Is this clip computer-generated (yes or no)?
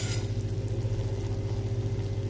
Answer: no